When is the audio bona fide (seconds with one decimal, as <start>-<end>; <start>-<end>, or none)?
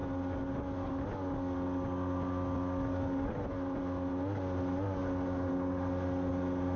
0.0-6.8